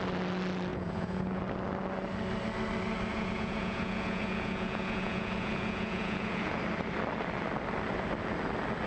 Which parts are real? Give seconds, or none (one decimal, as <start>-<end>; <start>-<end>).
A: 0.0-0.7; 1.4-3.1; 6.6-8.9